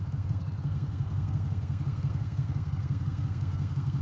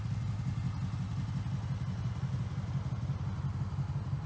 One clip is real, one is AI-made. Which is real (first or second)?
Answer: second